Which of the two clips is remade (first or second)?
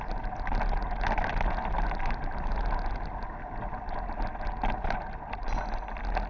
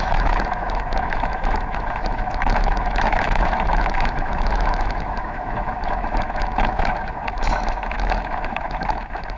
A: second